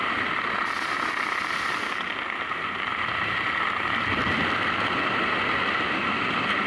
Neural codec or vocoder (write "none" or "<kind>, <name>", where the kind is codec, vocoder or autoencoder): none